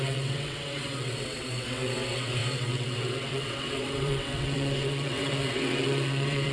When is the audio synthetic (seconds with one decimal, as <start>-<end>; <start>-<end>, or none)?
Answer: 0.0-6.5